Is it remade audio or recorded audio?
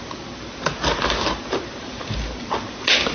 recorded